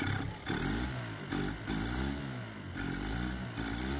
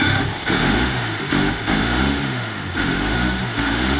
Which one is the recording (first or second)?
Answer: first